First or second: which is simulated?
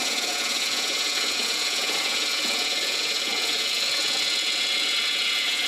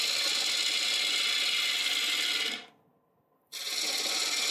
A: first